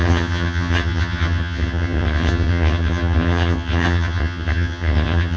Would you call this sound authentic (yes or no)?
no